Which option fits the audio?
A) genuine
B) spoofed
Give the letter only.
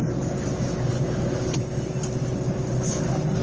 A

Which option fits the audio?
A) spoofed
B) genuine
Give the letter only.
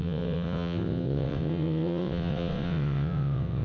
A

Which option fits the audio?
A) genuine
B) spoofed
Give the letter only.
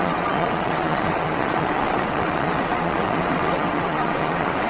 B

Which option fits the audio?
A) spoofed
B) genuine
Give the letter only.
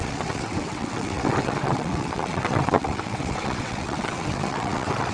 A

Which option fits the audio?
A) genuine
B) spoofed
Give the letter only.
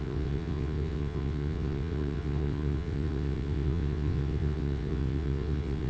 B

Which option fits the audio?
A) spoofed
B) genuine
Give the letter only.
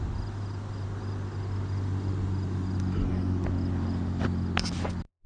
B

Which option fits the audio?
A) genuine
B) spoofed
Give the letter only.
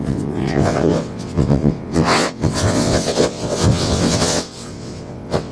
B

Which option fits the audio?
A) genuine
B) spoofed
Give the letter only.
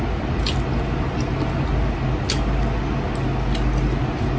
A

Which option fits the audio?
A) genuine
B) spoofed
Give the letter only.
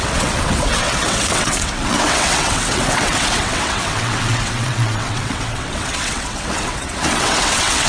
B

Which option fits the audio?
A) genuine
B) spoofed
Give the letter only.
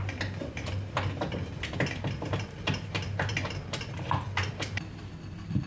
A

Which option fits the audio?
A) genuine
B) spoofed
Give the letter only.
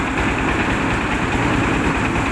A